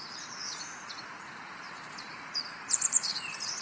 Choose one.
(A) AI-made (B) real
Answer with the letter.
A